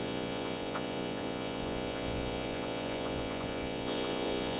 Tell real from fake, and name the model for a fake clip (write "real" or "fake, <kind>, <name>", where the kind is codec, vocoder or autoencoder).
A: fake, vocoder, Vocos